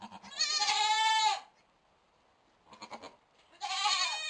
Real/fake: real